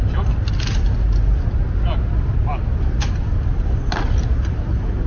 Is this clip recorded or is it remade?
recorded